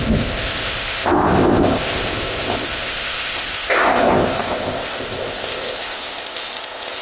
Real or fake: fake